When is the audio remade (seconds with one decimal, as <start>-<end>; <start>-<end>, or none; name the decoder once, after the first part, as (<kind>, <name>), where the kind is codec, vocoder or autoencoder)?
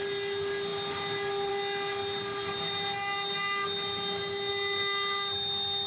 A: none